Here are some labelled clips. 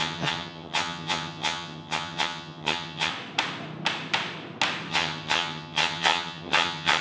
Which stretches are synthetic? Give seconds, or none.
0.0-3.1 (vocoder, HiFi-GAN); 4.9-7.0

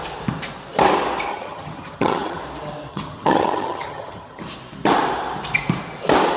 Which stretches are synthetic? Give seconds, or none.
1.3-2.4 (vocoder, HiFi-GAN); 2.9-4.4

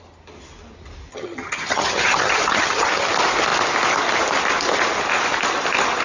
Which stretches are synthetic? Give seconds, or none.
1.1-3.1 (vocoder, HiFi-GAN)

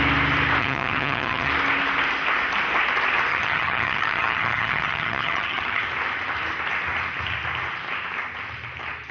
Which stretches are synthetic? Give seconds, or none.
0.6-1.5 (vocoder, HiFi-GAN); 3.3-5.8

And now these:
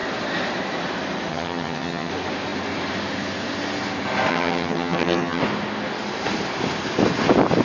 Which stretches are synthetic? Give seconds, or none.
1.3-2.1 (vocoder, HiFi-GAN); 4.3-5.4